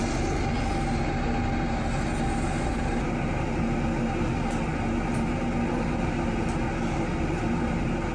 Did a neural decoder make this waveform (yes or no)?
no